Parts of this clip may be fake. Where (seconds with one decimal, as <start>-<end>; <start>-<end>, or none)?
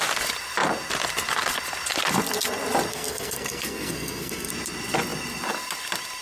2.9-4.5